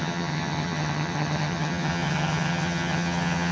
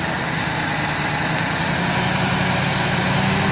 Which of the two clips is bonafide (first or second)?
second